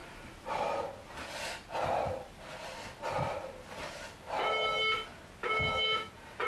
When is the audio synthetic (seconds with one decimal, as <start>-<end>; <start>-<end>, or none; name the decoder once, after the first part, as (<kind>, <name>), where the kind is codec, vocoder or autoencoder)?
5.4-6.1 (autoencoder, DAC-VAE)